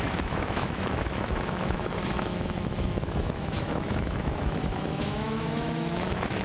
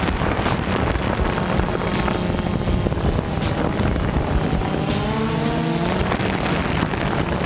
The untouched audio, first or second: second